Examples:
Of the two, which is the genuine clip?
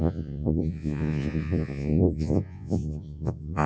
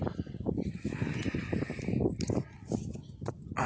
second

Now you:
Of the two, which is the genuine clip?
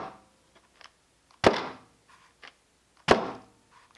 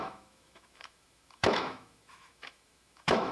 first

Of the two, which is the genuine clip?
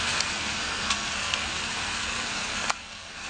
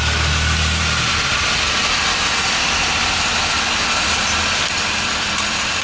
second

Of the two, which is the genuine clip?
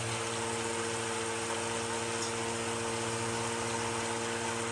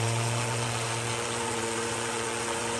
first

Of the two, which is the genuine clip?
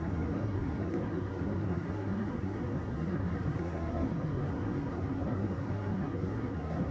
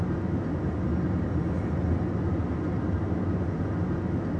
second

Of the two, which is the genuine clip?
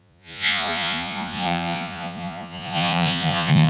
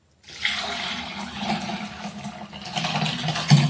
second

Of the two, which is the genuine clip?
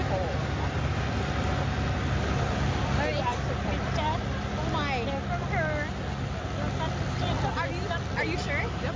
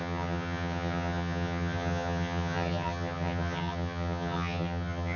first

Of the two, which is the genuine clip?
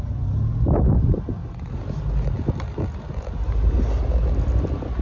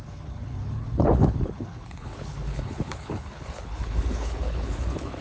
first